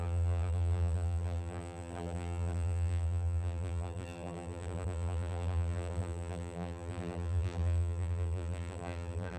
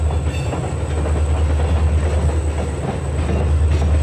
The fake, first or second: first